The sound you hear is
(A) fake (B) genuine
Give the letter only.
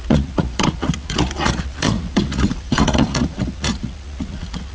A